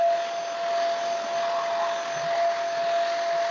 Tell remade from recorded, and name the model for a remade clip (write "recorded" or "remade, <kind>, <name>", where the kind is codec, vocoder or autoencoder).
recorded